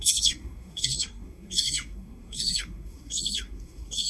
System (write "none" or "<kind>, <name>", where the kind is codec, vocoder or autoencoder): codec, SNAC